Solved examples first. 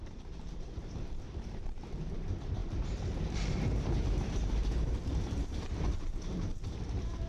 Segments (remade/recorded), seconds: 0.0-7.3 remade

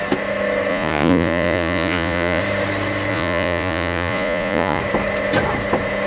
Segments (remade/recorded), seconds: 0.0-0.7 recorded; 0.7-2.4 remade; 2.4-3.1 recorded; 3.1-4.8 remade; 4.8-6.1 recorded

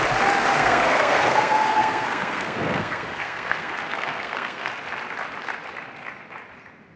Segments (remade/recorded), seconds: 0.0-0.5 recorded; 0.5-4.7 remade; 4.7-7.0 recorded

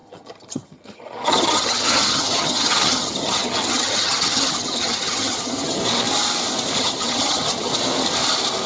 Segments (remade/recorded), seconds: 0.0-5.8 remade; 5.8-6.8 recorded; 6.8-7.7 remade; 7.7-8.7 recorded

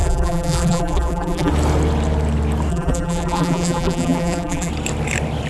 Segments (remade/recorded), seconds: 0.0-1.5 remade; 1.5-2.7 recorded; 2.7-4.7 remade; 4.7-5.5 recorded